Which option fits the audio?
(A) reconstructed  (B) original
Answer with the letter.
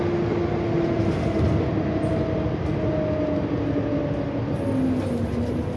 B